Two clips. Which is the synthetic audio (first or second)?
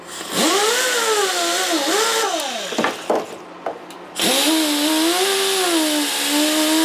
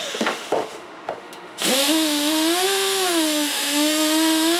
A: second